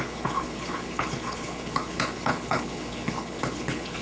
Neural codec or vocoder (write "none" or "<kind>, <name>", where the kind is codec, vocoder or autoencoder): codec, HILCodec